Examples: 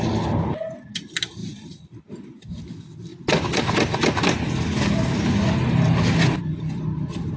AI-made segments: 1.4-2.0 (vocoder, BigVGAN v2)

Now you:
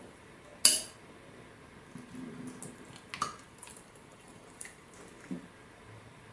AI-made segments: 4.1-4.8 (vocoder, BigVGAN v2)

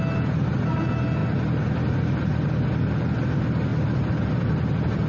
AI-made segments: none

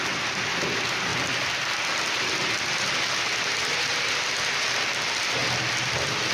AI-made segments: 0.0-1.1 (vocoder, BigVGAN v2); 4.9-5.4

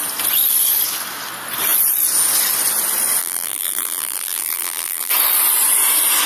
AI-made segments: 3.2-5.1 (vocoder, BigVGAN v2)

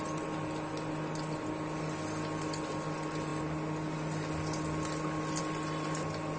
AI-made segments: none